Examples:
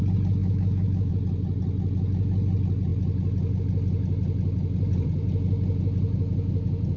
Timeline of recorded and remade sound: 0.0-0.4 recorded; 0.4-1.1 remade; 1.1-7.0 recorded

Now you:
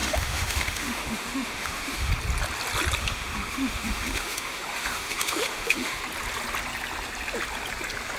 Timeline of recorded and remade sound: 0.0-2.1 remade; 2.1-3.0 recorded; 3.0-6.0 remade; 6.0-8.2 recorded

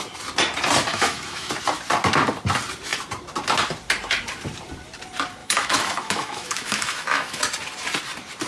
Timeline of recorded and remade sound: 0.0-0.9 recorded; 0.9-1.5 remade; 1.5-5.4 recorded; 5.4-7.4 remade; 7.4-8.5 recorded

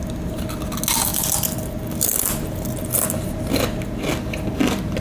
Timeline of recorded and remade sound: 0.0-5.0 recorded

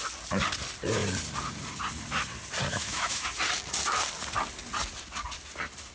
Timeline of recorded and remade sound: 0.0-2.7 recorded; 2.7-3.3 remade; 3.3-5.9 recorded

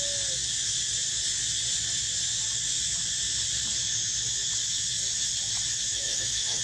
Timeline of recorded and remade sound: 0.0-5.9 recorded; 5.9-6.6 remade

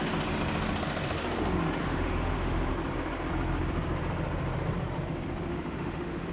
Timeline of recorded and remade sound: 0.0-1.8 recorded; 1.8-2.7 remade; 2.7-5.5 recorded; 5.5-6.3 remade

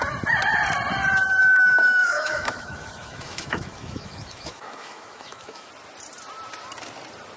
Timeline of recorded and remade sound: 0.0-1.4 recorded; 1.4-5.7 remade; 5.7-7.4 recorded